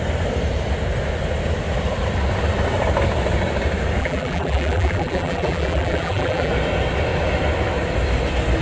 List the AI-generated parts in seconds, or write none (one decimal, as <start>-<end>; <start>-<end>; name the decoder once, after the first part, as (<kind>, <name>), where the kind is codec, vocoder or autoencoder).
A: 4.0-6.5 (vocoder, BigVGAN v2)

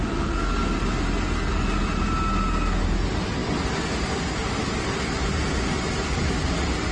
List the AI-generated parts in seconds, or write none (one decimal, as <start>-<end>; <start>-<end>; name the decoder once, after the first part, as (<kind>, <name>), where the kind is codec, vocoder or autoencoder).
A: none

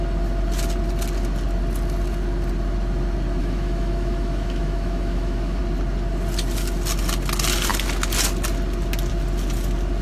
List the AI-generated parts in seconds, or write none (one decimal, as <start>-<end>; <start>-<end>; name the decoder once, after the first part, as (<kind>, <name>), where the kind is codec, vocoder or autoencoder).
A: 3.4-5.6 (autoencoder, DAC-VAE)

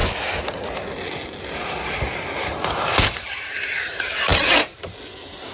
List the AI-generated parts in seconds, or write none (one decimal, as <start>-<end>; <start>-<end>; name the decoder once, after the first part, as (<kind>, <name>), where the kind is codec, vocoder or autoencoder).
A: 3.3-5.5 (vocoder, BigVGAN v2)

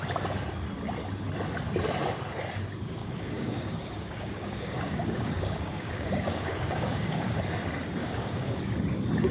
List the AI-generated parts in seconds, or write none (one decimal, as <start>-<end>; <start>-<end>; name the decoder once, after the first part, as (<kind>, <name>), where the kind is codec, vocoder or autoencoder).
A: 3.0-7.4 (codec, DAC); 8.0-8.6

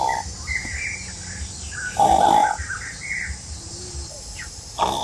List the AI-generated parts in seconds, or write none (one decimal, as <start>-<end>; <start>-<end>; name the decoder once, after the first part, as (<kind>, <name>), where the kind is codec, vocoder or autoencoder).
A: 0.6-1.4 (vocoder, BigVGAN v2); 2.4-3.7